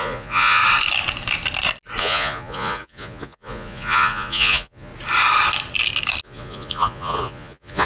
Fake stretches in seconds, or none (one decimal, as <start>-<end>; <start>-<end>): 0.0-0.6; 2.0-4.9; 6.2-7.9